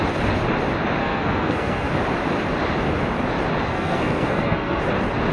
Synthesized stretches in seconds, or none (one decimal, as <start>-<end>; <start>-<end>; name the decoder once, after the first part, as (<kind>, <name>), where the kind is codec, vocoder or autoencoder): 1.0-1.9 (codec, SNAC); 3.7-4.8